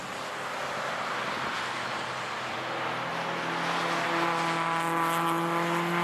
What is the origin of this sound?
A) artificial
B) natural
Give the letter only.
B